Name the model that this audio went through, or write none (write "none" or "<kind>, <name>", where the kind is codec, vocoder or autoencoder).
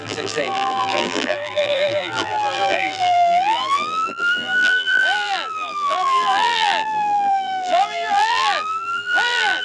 vocoder, BigVGAN v2